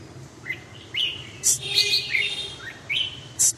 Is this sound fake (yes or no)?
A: yes